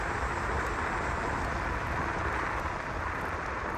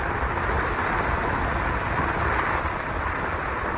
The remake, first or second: second